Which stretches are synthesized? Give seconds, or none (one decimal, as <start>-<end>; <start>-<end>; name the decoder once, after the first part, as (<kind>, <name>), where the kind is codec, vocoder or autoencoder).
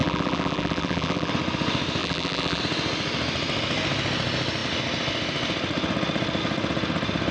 0.0-1.3 (vocoder, BigVGAN v2); 2.0-2.6